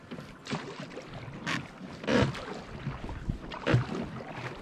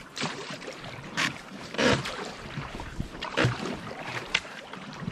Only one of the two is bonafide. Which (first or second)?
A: first